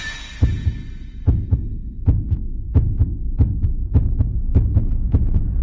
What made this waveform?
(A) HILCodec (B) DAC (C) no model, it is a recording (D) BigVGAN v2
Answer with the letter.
C